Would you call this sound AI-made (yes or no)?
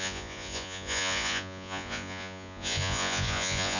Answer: yes